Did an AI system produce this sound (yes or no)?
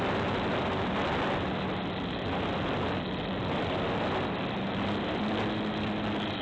no